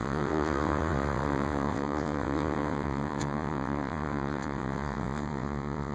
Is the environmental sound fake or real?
fake